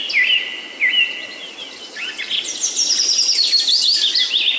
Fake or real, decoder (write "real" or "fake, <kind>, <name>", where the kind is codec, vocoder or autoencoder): real